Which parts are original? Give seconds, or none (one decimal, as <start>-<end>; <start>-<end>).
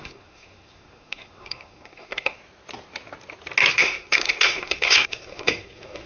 2.4-3.7